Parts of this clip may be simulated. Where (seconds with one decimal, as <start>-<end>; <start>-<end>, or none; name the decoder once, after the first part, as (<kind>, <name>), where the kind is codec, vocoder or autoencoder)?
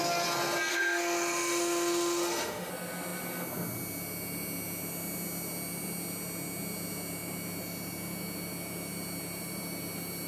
0.7-2.7 (autoencoder, DAC-VAE)